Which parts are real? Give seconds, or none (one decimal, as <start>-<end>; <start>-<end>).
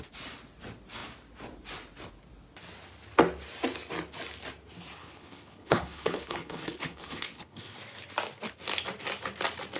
0.0-5.0; 7.8-9.8